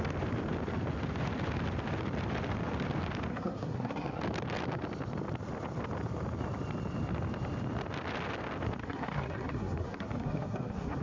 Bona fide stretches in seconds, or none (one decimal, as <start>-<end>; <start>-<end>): 0.0-3.3; 4.2-8.8